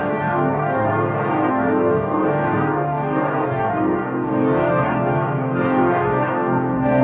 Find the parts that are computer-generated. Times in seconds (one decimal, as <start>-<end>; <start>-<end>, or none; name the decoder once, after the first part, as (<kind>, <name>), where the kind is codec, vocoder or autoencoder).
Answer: 0.0-0.9 (codec, DAC); 1.5-7.0